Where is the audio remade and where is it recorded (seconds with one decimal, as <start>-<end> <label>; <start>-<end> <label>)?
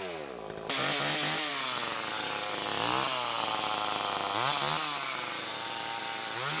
0.0-6.6 recorded